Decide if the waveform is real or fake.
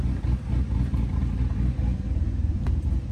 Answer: real